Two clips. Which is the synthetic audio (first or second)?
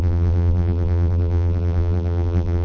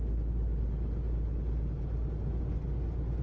first